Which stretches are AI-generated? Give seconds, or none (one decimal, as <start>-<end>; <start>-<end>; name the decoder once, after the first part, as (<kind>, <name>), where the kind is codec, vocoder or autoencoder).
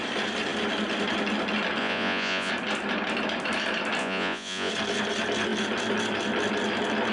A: 1.8-2.5 (vocoder, Vocos); 4.0-4.7